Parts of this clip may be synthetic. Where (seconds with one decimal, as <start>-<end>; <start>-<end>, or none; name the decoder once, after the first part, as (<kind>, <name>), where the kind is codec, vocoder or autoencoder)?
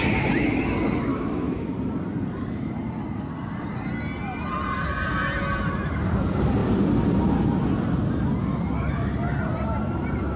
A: 1.1-1.7 (autoencoder, DAC-VAE)